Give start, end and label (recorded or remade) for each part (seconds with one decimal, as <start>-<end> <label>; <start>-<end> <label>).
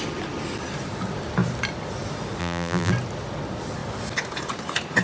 0.0-2.4 recorded; 2.4-2.9 remade; 2.9-5.0 recorded